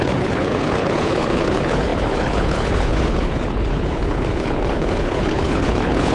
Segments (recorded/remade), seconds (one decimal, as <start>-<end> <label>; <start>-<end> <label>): 0.0-6.1 remade